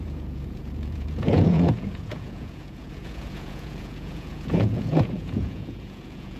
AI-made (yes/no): yes